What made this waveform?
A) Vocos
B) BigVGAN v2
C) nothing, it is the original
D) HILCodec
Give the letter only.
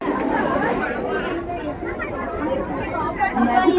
B